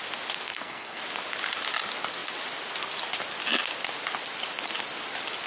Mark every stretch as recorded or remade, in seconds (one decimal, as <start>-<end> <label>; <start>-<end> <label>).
0.0-0.5 recorded; 0.5-1.0 remade; 1.0-5.5 recorded